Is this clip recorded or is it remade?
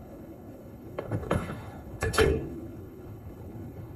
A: remade